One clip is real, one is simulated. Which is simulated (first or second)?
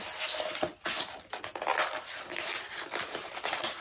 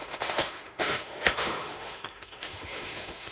second